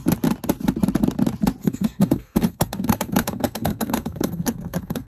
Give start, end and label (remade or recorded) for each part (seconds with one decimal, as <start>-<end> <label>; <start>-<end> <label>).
0.0-1.6 recorded; 1.6-5.1 remade